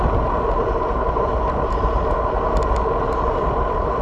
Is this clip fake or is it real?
real